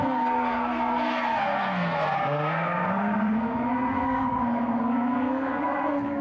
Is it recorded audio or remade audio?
remade